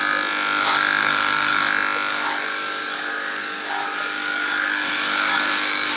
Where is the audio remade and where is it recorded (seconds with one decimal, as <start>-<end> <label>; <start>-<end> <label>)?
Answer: 0.0-1.0 recorded; 1.0-1.6 remade; 1.6-2.1 recorded; 2.1-6.0 remade

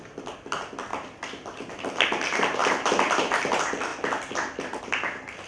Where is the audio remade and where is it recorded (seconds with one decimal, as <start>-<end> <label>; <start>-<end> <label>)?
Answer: 0.0-0.9 recorded; 0.9-1.7 remade; 1.7-5.5 recorded